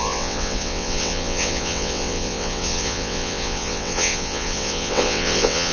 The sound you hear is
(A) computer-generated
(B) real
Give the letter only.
A